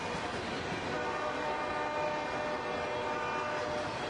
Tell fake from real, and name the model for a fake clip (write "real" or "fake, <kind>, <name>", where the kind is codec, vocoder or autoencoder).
real